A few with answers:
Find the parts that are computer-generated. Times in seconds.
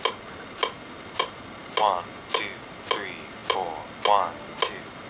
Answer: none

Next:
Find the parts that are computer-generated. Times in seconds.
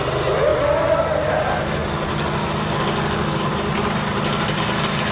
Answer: none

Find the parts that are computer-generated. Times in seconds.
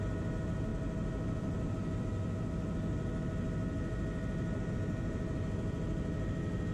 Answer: none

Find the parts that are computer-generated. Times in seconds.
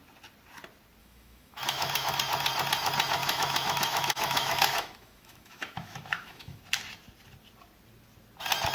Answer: 1.0-2.1 (autoencoder, DAC-VAE); 3.2-6.6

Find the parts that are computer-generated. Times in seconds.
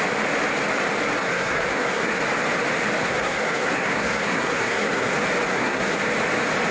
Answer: 1.2-2.2 (codec, SNAC); 3.0-5.1; 5.5-6.0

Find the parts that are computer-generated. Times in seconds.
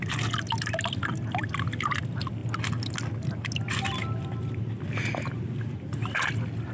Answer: none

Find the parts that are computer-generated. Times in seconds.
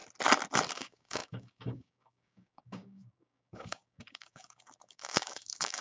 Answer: 0.7-5.8 (codec, DAC)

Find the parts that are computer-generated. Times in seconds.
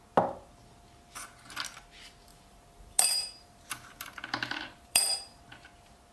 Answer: 2.3-5.4 (vocoder, BigVGAN v2)